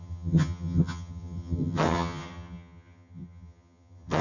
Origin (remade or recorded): remade